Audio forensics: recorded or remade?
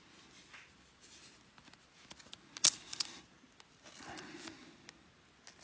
recorded